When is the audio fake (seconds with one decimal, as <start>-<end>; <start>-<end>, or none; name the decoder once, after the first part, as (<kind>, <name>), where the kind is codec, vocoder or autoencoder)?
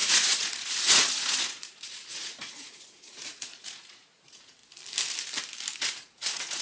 0.0-4.6 (vocoder, Vocos); 5.8-6.6